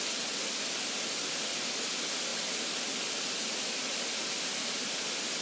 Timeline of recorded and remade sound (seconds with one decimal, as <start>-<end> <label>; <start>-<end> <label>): 0.0-5.4 recorded